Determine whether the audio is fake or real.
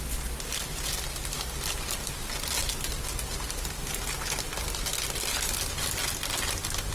real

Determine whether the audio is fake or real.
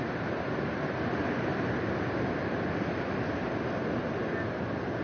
real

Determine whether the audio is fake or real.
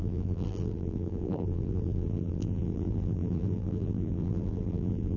fake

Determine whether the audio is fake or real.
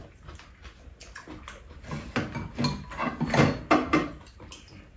real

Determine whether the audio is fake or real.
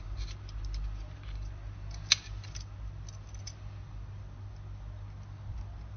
real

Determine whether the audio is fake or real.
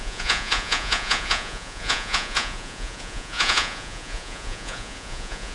fake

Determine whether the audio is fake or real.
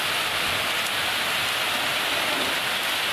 real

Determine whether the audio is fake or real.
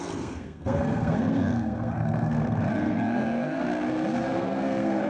fake